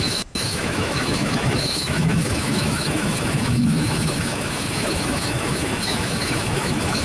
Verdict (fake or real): fake